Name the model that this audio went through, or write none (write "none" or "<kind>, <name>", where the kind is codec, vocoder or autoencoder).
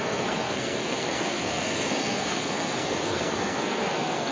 codec, SNAC